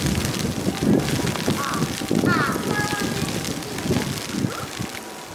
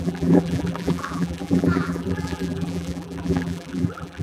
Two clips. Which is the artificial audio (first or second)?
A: second